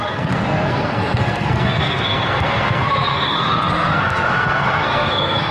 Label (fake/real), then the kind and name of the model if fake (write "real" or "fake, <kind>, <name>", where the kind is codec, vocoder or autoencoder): fake, codec, SNAC